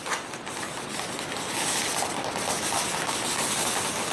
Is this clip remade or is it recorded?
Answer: recorded